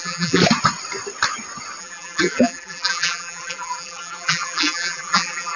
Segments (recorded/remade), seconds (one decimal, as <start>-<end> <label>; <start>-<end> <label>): 0.0-0.4 remade; 0.4-1.8 recorded; 1.8-5.6 remade